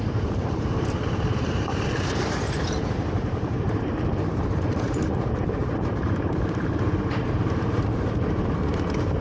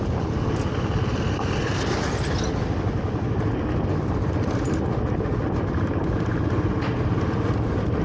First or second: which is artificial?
first